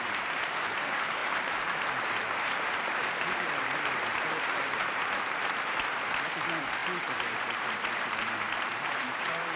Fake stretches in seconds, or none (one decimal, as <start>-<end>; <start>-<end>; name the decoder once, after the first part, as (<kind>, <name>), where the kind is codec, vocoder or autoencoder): 0.0-9.6 (vocoder, BigVGAN v2)

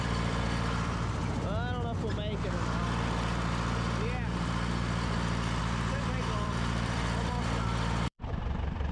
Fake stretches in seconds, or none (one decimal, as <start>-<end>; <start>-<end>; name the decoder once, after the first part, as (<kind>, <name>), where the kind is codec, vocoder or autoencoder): 0.0-1.2 (vocoder, BigVGAN v2); 5.6-8.9

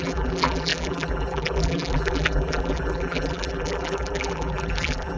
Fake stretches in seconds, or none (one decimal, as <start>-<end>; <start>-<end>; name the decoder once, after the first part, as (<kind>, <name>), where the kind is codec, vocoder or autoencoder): 0.0-5.2 (vocoder, BigVGAN v2)

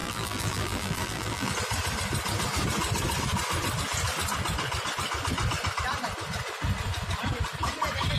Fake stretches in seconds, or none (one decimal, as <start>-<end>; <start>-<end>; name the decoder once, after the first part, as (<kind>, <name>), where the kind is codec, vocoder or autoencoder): 0.0-1.5 (vocoder, BigVGAN v2)